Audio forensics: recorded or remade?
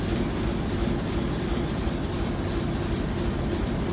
recorded